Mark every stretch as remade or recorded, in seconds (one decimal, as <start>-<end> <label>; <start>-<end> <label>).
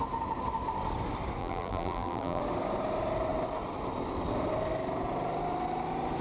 0.0-1.4 recorded; 1.4-2.4 remade; 2.4-6.2 recorded